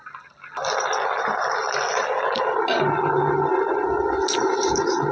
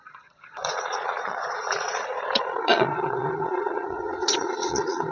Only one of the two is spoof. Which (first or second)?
second